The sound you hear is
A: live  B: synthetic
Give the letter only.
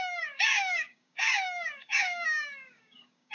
B